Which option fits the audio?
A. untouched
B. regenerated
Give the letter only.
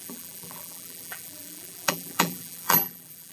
B